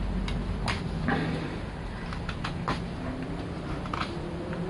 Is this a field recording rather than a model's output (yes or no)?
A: yes